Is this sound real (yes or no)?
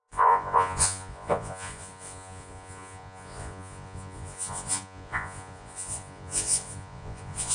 no